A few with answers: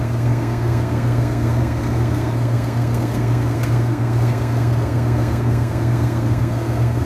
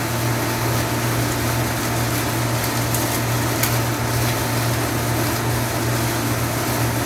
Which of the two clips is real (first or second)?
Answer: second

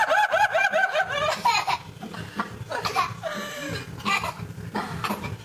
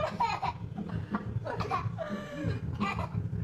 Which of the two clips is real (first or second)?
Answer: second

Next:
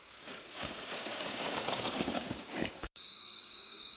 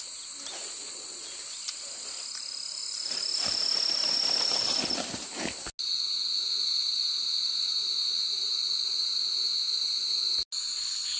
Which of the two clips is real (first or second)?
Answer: second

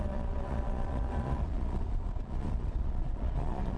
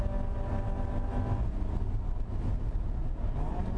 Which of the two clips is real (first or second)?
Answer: second